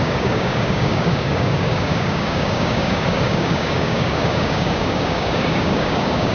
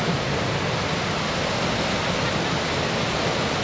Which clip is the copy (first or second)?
first